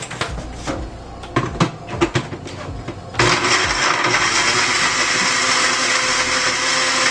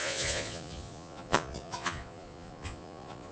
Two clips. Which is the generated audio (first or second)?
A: second